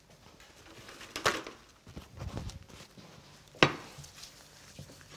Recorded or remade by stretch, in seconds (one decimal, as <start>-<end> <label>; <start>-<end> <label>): 0.0-5.2 recorded